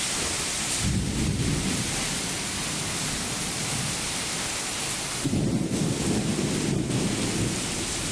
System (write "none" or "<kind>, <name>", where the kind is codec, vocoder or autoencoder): none